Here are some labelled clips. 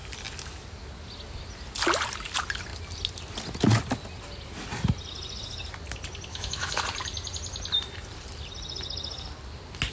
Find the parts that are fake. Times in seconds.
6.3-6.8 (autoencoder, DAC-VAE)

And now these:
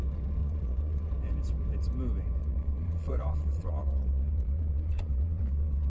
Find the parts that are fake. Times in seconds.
0.4-1.1 (vocoder, Vocos); 2.4-5.9

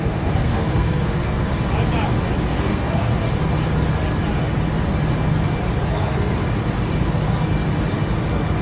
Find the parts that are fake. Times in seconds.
0.0-1.5 (codec, SNAC); 2.5-3.1; 5.9-6.4

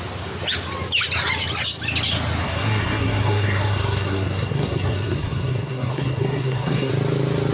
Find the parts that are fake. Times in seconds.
2.4-6.9 (codec, SNAC)

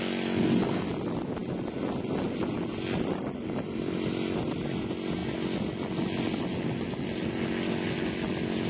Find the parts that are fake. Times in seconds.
none

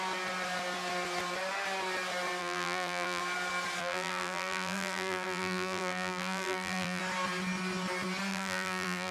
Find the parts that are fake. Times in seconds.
2.4-3.2 (vocoder, BigVGAN v2); 3.8-7.0; 8.3-9.1